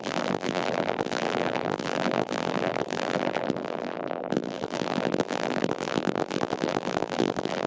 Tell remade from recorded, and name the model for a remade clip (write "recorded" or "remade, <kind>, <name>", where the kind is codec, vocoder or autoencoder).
remade, vocoder, BigVGAN v2